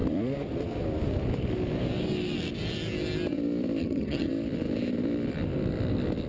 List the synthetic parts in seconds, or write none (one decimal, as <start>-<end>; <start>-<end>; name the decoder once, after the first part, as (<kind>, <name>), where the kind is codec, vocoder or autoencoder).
3.8-4.3 (vocoder, HiFi-GAN)